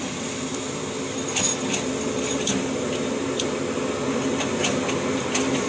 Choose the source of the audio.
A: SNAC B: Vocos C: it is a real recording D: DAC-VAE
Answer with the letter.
C